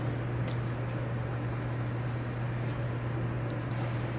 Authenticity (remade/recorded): recorded